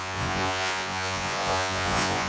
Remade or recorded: remade